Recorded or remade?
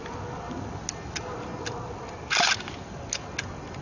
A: recorded